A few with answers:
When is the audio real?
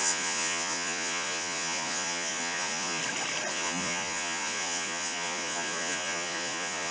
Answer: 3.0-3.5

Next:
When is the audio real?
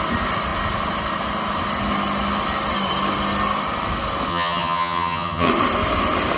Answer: 0.0-4.3; 5.5-6.4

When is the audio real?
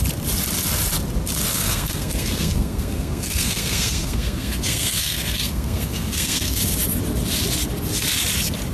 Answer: 0.0-1.5; 6.6-8.7